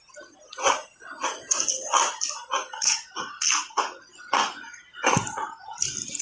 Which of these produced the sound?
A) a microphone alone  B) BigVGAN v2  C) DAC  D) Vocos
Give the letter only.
A